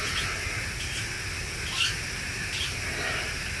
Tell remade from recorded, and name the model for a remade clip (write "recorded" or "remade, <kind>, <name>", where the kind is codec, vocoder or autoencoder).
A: recorded